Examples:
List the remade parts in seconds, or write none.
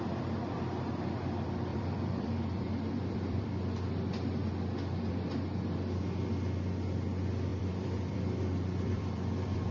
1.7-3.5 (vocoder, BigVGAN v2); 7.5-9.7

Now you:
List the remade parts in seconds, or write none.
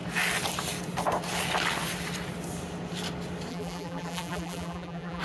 3.5-5.2 (vocoder, BigVGAN v2)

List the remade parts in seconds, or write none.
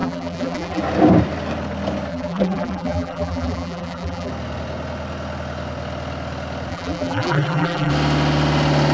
0.0-0.8 (vocoder, BigVGAN v2); 2.1-4.3; 6.7-7.9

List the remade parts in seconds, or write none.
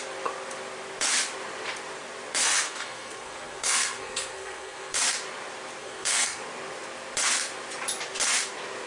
2.4-5.0 (codec, SNAC); 5.8-6.4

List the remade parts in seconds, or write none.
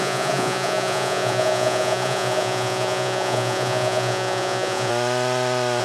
0.0-4.9 (vocoder, Vocos)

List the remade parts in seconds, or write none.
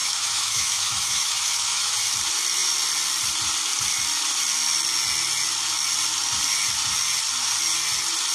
0.0-1.9 (autoencoder, DAC-VAE)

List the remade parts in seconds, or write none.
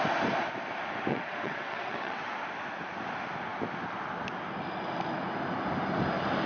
1.1-2.2 (vocoder, WaveNeXt)